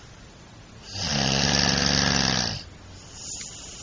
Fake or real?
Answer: real